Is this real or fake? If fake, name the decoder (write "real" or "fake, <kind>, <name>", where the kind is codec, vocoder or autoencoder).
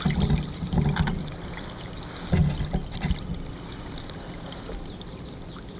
real